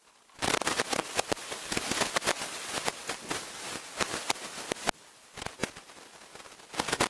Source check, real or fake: real